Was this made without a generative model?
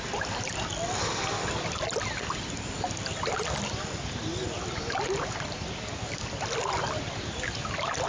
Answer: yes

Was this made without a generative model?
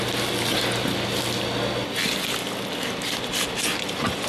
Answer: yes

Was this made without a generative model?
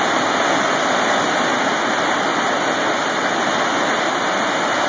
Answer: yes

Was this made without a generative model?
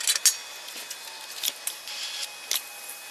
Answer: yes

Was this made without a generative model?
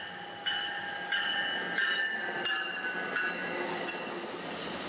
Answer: yes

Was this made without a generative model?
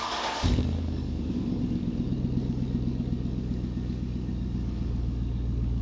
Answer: no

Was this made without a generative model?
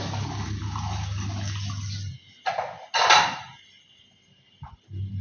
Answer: yes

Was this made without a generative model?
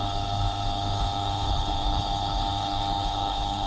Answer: no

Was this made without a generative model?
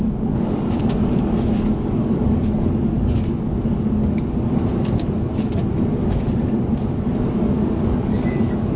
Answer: no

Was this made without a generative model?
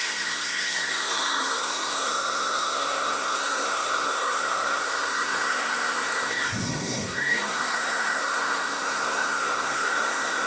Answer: no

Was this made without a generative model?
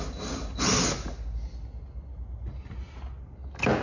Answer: yes